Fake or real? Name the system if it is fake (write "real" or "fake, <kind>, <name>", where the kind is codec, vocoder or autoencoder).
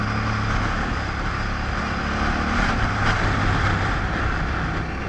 real